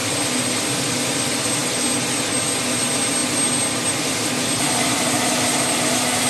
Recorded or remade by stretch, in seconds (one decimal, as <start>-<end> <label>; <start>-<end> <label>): 0.0-6.3 recorded